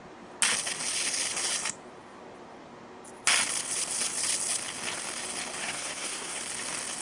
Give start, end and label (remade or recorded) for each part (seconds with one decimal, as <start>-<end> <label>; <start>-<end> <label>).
0.0-5.6 recorded; 5.6-6.4 remade; 6.4-7.0 recorded